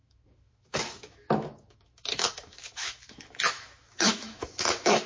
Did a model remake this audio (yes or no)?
yes